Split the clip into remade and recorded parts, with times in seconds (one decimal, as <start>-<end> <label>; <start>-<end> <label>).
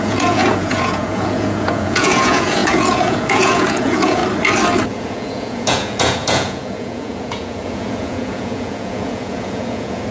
0.0-4.2 remade; 4.2-4.9 recorded; 4.9-10.1 remade